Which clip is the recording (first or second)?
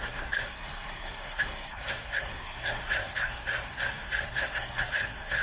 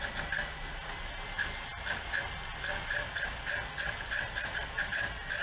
second